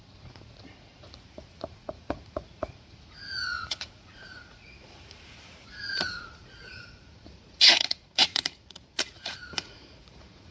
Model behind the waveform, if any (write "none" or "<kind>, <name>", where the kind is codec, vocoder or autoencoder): vocoder, Vocos